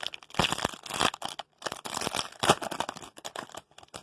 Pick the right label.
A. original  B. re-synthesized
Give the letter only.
A